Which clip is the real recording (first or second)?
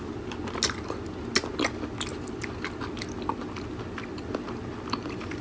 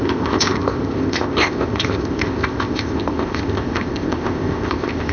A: first